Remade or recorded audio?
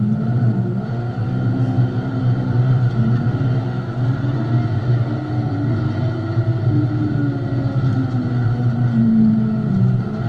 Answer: recorded